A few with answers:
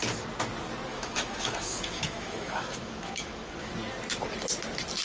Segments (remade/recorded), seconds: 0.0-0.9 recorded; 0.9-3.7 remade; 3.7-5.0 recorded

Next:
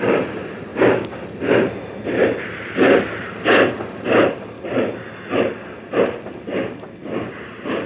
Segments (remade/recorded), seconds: 0.0-7.9 recorded

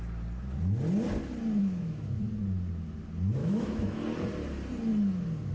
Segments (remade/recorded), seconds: 0.0-1.6 recorded; 1.6-2.2 remade; 2.2-3.4 recorded; 3.4-4.0 remade; 4.0-5.5 recorded

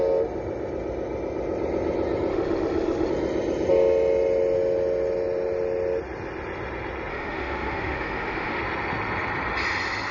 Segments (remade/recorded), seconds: 0.0-2.3 recorded; 2.3-3.1 remade; 3.1-7.1 recorded; 7.1-8.6 remade; 8.6-10.1 recorded